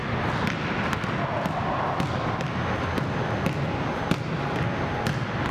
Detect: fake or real real